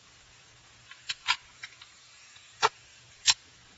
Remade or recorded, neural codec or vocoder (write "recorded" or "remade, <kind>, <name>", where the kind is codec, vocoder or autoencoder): remade, vocoder, Vocos